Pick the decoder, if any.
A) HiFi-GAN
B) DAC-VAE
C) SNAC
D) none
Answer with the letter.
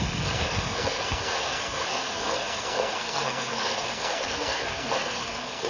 C